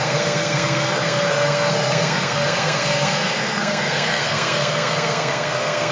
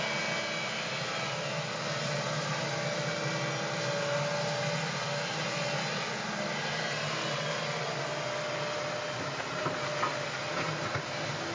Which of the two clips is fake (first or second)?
first